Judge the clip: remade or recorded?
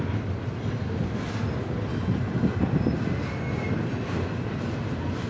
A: recorded